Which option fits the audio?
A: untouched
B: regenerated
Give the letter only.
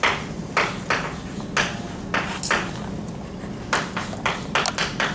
A